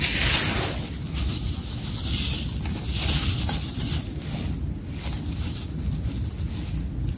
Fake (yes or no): no